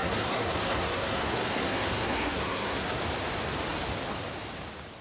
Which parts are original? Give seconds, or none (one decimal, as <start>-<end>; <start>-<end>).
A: 3.0-5.0